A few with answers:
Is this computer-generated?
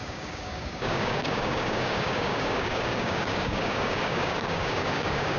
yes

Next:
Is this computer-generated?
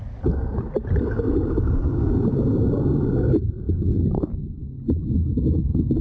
no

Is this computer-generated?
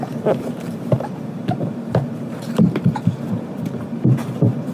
yes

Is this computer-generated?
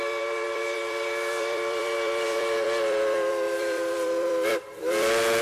yes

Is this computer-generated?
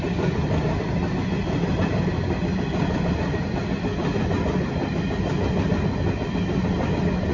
no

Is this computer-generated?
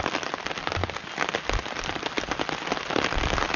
no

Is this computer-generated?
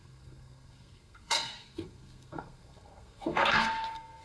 yes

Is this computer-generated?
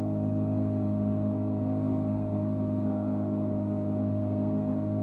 yes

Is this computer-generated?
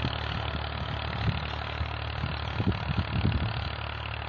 no